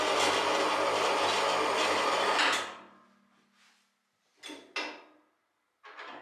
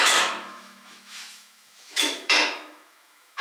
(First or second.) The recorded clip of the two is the first